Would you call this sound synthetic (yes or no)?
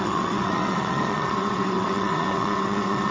yes